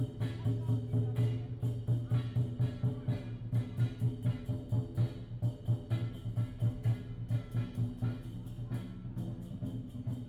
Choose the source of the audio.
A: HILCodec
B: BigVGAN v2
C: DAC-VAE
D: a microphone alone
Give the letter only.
D